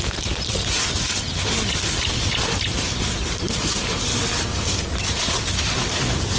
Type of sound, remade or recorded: recorded